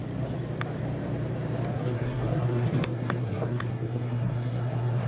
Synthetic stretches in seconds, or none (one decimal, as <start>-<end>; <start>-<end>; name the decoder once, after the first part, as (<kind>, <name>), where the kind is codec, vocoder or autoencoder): 1.7-5.1 (codec, SNAC)